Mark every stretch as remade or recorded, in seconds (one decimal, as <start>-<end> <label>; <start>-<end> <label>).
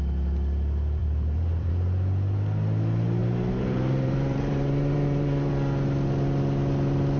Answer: 0.0-1.0 recorded; 1.0-1.7 remade; 1.7-3.2 recorded; 3.2-5.5 remade; 5.5-7.2 recorded